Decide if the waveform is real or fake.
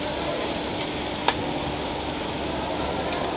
real